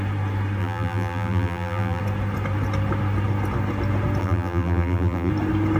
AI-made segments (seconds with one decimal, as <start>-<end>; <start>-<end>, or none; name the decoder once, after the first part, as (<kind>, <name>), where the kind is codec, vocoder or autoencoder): 0.6-2.0 (vocoder, BigVGAN v2); 4.2-5.3